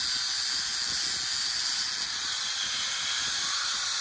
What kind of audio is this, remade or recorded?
recorded